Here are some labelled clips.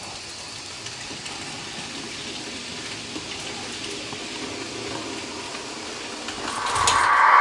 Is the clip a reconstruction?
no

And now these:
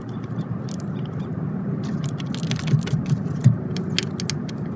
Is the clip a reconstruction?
no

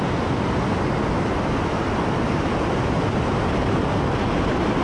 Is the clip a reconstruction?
no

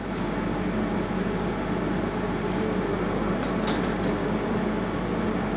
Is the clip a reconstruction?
no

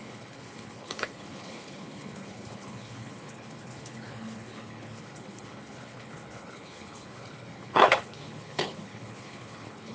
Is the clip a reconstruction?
yes